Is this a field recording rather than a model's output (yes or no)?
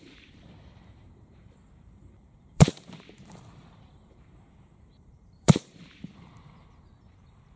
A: no